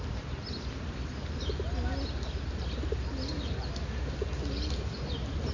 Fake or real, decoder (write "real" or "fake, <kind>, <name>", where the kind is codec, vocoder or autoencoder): real